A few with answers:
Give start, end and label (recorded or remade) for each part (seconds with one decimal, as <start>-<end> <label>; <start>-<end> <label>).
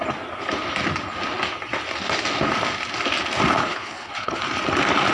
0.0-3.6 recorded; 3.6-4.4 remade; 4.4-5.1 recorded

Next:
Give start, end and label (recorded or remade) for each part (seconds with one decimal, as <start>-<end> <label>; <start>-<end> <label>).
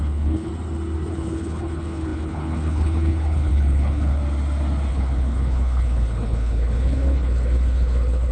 0.0-0.5 remade; 0.5-1.1 recorded; 1.1-4.2 remade; 4.2-4.9 recorded; 4.9-8.3 remade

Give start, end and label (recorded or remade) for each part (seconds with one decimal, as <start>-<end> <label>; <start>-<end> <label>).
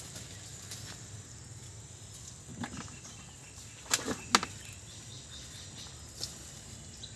0.0-7.2 recorded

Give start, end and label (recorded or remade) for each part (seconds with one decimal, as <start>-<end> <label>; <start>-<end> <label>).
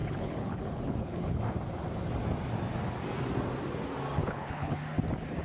0.0-1.4 remade; 1.4-4.2 recorded; 4.2-4.8 remade; 4.8-5.4 recorded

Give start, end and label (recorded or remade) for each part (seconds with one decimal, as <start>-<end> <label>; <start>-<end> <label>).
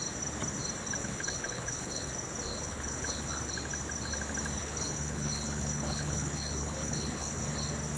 0.0-1.0 recorded; 1.0-2.1 remade; 2.1-2.5 recorded; 2.5-3.3 remade; 3.3-4.6 recorded; 4.6-7.4 remade; 7.4-8.0 recorded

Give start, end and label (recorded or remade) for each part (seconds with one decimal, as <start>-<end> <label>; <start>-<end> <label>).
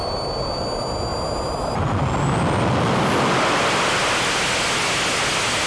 0.0-5.7 recorded